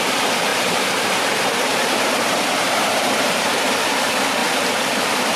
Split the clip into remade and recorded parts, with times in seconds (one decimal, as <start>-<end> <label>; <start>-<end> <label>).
0.0-0.5 recorded; 0.5-3.7 remade; 3.7-4.4 recorded; 4.4-5.4 remade